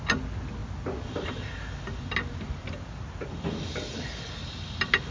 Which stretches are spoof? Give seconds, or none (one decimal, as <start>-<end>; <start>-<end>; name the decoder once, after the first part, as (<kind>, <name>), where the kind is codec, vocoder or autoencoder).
none